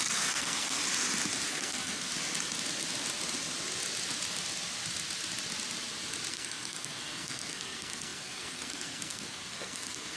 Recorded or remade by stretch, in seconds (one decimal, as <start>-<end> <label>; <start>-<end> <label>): 0.0-0.8 remade; 0.8-1.5 recorded; 1.5-2.1 remade; 2.1-6.3 recorded; 6.3-10.2 remade